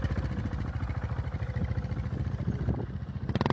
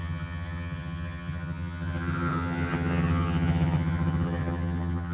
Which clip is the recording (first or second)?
first